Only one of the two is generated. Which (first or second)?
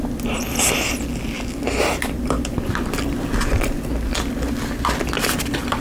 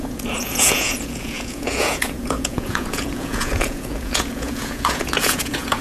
second